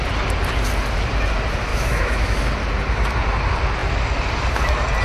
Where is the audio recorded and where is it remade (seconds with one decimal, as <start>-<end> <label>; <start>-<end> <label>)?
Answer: 0.0-1.7 recorded; 1.7-2.4 remade; 2.4-5.0 recorded